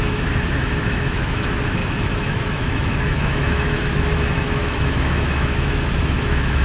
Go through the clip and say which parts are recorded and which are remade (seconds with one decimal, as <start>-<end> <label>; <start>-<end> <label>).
0.0-6.6 remade